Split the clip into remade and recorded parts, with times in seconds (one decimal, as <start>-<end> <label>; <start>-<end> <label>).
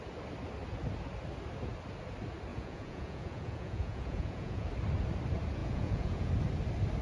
0.0-2.5 recorded; 2.5-4.7 remade; 4.7-5.6 recorded; 5.6-6.3 remade; 6.3-7.0 recorded